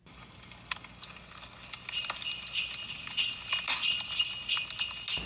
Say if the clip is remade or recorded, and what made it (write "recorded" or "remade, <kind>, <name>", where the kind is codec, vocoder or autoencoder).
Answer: recorded